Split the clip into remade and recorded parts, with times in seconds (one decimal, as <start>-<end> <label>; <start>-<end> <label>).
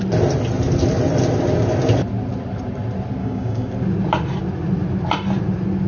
0.0-3.2 recorded; 3.2-3.7 remade; 3.7-5.9 recorded